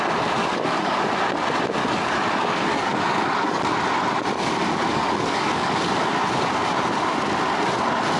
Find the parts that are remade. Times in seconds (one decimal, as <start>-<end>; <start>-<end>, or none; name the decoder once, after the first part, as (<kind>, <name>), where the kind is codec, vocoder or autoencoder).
0.4-1.1 (codec, DAC); 1.8-3.6; 4.9-5.7